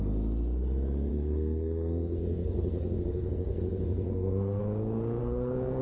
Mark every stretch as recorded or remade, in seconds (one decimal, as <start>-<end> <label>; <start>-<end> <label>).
0.0-1.1 recorded; 1.1-4.6 remade; 4.6-5.2 recorded; 5.2-5.8 remade